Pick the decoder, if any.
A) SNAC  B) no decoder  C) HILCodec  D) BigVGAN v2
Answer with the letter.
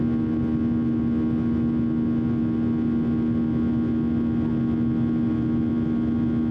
B